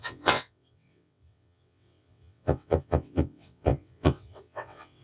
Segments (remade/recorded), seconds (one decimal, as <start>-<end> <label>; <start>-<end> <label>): 0.0-5.0 remade